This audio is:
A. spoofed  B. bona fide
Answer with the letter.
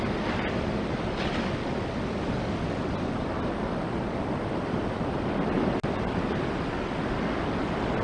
B